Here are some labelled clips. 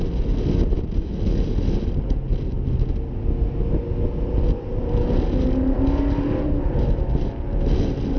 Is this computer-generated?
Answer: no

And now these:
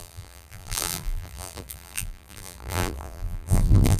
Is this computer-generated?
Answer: yes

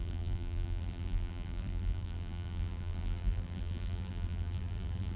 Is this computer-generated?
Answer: yes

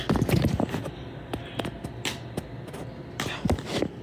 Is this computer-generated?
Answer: no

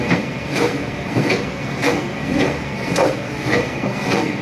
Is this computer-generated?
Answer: yes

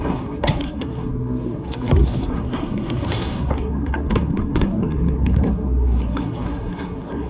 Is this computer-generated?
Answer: yes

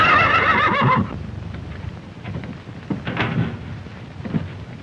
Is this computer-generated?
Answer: no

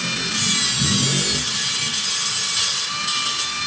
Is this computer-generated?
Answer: no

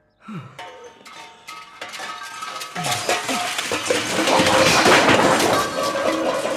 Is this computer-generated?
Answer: no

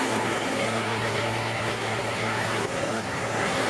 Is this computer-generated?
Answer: yes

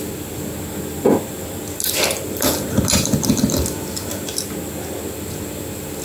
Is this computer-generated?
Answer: no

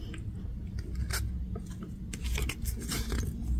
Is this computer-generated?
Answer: yes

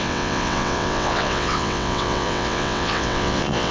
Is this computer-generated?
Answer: yes